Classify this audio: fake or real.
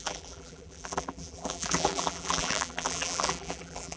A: fake